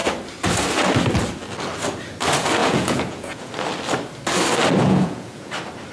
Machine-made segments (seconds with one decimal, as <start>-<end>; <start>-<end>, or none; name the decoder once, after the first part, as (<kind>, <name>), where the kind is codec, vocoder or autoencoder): 2.6-3.5 (vocoder, Vocos); 4.8-5.5